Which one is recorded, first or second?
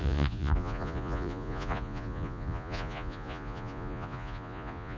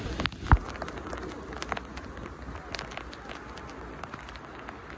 second